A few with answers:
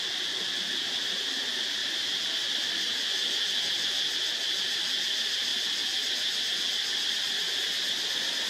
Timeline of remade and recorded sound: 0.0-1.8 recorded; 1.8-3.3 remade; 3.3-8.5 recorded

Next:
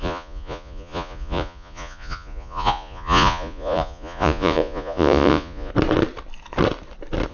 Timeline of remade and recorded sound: 0.0-5.7 remade; 5.7-7.3 recorded

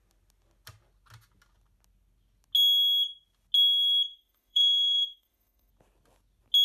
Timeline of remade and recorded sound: 0.0-4.1 recorded; 4.1-5.7 remade; 5.7-6.6 recorded

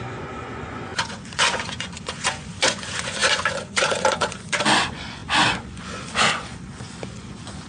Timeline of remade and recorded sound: 0.0-7.7 remade

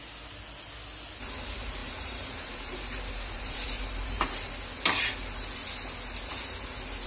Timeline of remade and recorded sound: 0.0-1.8 recorded; 1.8-4.5 remade; 4.5-7.1 recorded